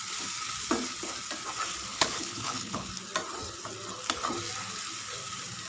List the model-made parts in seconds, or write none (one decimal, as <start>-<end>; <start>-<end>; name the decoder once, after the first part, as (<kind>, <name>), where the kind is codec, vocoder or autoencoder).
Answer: 1.9-2.9 (codec, HILCodec)